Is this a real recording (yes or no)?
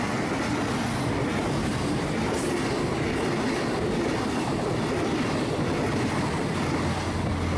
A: yes